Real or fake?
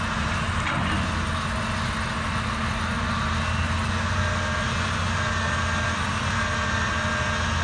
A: real